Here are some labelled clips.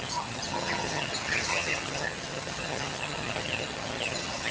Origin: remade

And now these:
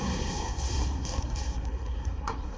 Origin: remade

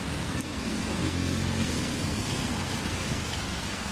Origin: remade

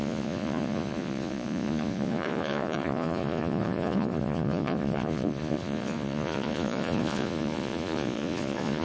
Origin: remade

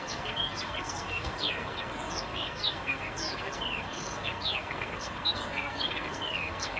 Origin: remade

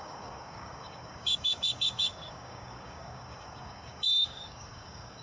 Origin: remade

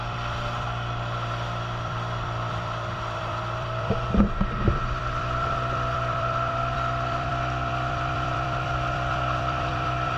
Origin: remade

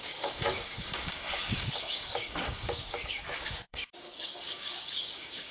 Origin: remade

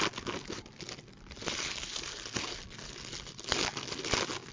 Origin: recorded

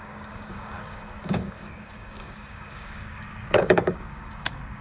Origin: remade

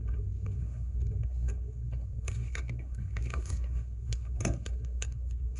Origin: remade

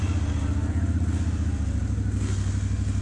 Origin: recorded